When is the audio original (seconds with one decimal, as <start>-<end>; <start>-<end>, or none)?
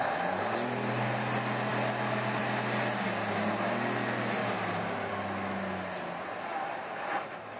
0.0-4.4; 5.1-6.5; 7.1-7.6